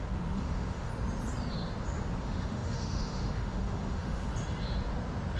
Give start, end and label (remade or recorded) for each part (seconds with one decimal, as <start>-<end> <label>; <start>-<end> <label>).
0.0-0.9 remade; 0.9-2.2 recorded; 2.2-4.3 remade; 4.3-5.4 recorded